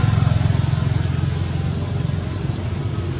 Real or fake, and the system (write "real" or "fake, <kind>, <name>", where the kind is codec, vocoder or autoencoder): real